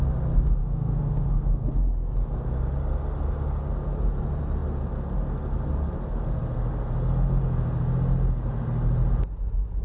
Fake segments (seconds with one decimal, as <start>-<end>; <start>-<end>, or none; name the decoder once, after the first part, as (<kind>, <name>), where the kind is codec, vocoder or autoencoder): 0.6-1.7 (autoencoder, DAC-VAE)